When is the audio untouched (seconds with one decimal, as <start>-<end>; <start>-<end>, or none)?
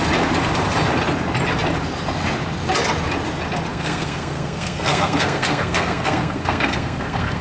0.0-3.7